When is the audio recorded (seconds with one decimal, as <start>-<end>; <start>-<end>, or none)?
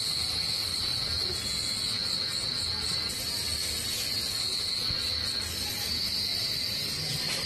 0.0-6.3